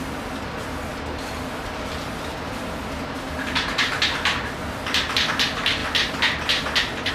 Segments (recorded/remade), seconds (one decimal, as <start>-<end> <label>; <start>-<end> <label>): 0.0-0.9 recorded; 0.9-5.2 remade; 5.2-7.1 recorded